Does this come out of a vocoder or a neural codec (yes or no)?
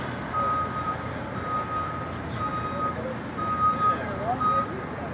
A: no